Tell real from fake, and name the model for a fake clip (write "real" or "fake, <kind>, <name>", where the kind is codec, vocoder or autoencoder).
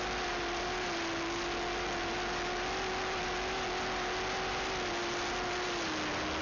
real